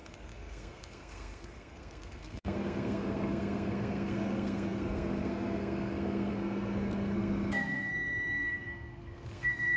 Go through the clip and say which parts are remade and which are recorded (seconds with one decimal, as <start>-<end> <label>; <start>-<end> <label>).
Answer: 0.0-9.8 remade